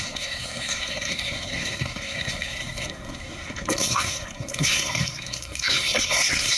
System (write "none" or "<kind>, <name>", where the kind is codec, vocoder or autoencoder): codec, SNAC